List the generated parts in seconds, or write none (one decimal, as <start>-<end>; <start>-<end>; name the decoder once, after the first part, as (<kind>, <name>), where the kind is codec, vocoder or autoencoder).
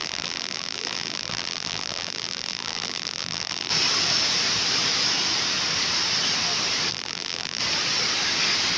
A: 0.0-3.7 (vocoder, BigVGAN v2); 6.9-7.6